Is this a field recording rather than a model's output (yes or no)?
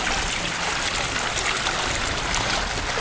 yes